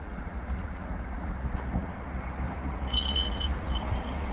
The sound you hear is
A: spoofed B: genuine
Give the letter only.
A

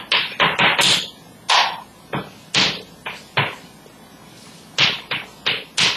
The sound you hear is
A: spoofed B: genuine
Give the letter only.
B